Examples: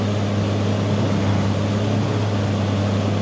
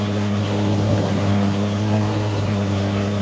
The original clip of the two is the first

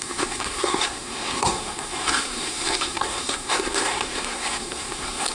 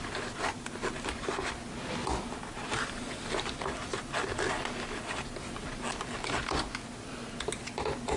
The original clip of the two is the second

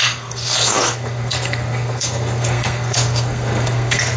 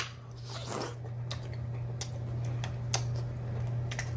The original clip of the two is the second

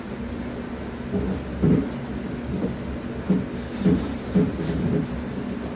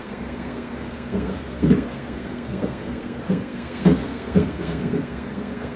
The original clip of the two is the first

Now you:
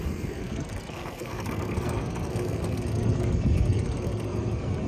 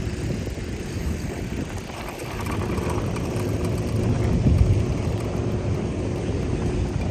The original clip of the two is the second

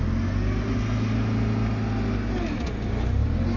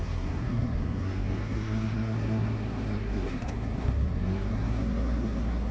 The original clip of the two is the first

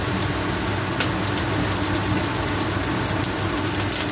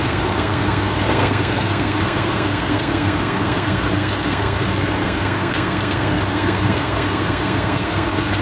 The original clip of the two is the first